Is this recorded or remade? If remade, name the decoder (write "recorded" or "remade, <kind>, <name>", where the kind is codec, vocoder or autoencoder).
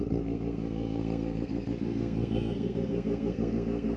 remade, codec, SNAC